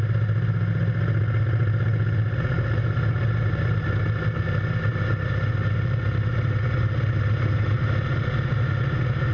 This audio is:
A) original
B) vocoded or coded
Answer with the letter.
A